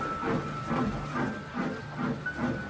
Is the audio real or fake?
real